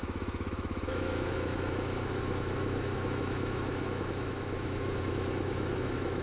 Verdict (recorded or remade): remade